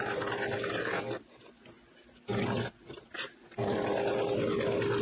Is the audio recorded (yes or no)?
yes